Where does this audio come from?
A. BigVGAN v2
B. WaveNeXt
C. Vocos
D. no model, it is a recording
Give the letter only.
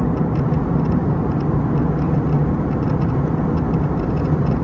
D